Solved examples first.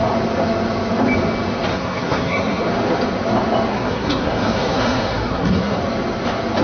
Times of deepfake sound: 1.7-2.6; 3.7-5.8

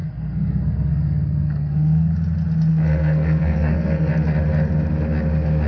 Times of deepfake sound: 0.0-2.1; 2.7-4.1

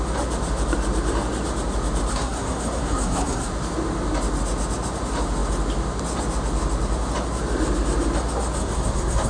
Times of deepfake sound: 2.1-3.5; 8.6-9.3

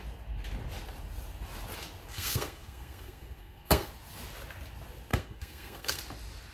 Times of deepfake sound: 2.1-3.9; 5.1-6.0

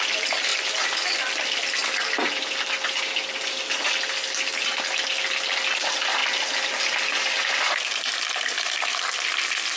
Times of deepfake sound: none

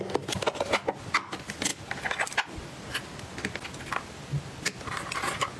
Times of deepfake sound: none

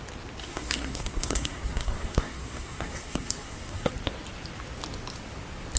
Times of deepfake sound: 0.4-3.9